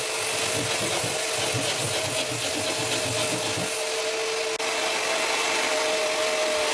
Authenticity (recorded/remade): recorded